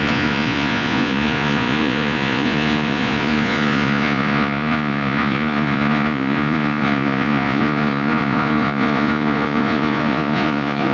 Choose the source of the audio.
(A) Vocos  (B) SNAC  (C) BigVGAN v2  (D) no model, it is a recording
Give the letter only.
A